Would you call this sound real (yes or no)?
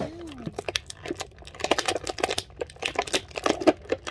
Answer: yes